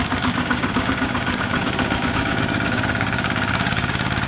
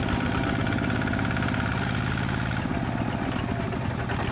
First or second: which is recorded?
second